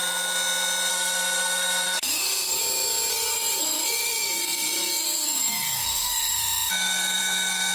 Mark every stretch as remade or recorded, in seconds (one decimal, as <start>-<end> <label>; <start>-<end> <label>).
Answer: 0.0-0.9 recorded; 0.9-2.6 remade; 2.6-3.1 recorded; 3.1-7.7 remade